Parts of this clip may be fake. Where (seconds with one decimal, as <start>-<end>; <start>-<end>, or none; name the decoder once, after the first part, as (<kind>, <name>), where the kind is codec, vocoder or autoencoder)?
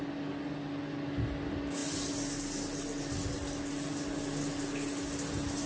none